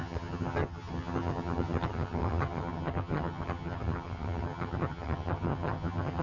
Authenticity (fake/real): fake